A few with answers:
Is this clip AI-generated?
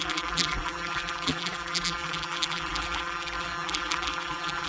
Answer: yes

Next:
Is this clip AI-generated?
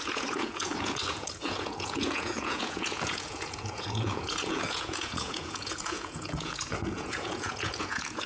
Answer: yes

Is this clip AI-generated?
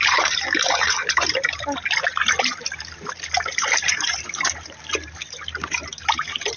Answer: yes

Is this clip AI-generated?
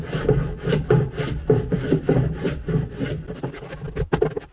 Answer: yes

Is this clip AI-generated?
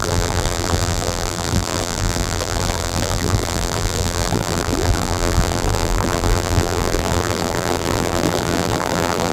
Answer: yes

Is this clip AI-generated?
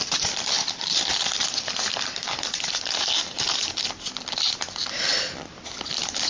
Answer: yes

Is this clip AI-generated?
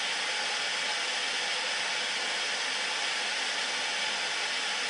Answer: no